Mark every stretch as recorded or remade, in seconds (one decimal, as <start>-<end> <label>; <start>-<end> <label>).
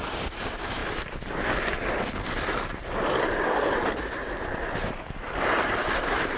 0.0-6.4 recorded